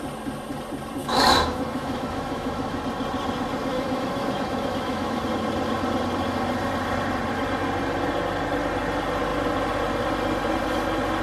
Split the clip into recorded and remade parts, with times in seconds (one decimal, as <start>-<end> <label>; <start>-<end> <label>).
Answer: 0.0-1.0 recorded; 1.0-2.8 remade; 2.8-3.7 recorded; 3.7-5.2 remade; 5.2-11.2 recorded